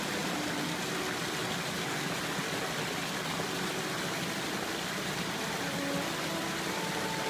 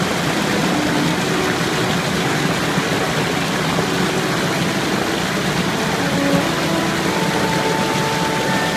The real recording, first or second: second